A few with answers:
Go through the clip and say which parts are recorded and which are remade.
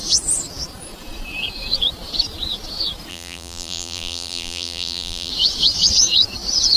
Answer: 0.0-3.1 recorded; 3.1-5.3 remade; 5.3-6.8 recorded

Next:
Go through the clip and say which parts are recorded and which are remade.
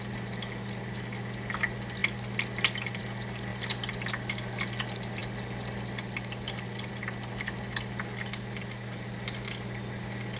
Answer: 0.0-2.0 recorded; 2.0-3.0 remade; 3.0-5.2 recorded; 5.2-6.9 remade; 6.9-10.4 recorded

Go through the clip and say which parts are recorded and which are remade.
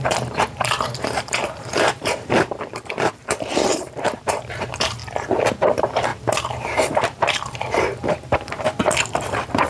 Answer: 0.0-5.0 remade; 5.0-5.6 recorded; 5.6-9.7 remade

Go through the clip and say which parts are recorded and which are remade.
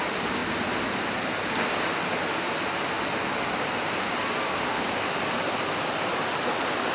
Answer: 0.0-0.4 remade; 0.4-4.5 recorded; 4.5-6.9 remade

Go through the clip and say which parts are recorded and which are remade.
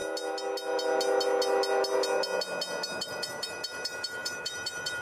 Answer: 0.0-3.0 recorded; 3.0-5.0 remade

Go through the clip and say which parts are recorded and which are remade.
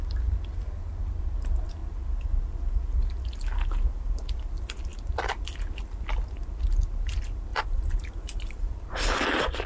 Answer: 0.0-7.5 recorded; 7.5-8.7 remade; 8.7-9.7 recorded